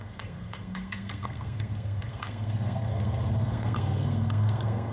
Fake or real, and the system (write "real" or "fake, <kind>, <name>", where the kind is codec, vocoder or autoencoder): fake, codec, SNAC